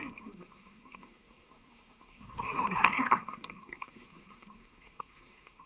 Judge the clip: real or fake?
fake